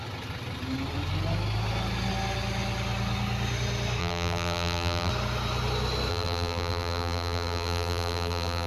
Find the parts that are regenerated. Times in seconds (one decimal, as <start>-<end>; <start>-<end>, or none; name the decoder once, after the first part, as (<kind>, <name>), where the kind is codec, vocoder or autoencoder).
4.0-5.1 (vocoder, BigVGAN v2); 6.1-8.7